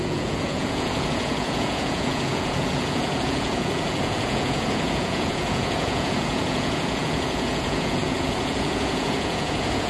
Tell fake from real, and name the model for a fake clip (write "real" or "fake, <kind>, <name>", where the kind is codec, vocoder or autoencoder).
fake, vocoder, Vocos